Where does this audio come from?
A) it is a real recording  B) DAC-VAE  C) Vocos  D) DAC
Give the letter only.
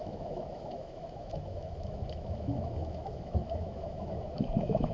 B